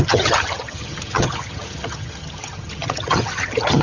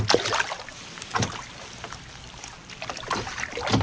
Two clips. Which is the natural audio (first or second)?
second